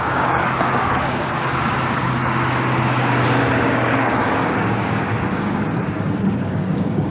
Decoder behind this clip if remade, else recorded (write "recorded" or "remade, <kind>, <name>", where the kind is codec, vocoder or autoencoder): remade, codec, DAC